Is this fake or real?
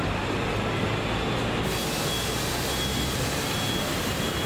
real